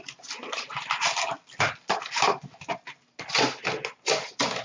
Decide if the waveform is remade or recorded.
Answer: recorded